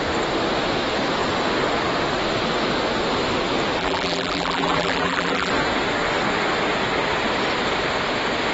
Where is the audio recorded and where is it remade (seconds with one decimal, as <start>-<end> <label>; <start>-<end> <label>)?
0.0-3.8 recorded; 3.8-5.5 remade; 5.5-8.5 recorded